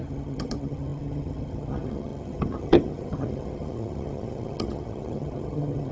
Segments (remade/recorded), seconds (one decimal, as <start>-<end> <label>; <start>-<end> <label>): 0.0-5.9 remade